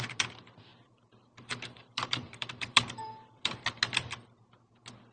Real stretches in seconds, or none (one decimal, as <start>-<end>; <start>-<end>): 0.0-0.7; 3.8-5.1